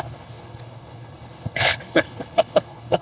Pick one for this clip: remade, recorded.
remade